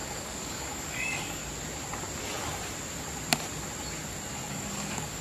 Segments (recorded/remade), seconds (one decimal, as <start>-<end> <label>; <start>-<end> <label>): 0.0-1.4 remade; 1.4-4.5 recorded; 4.5-5.2 remade